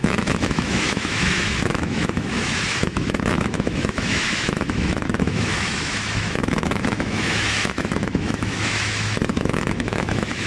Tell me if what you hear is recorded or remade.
remade